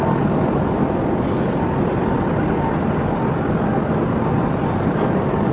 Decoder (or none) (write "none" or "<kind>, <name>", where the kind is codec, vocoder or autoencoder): none